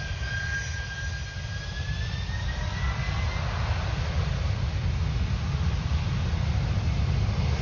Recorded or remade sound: recorded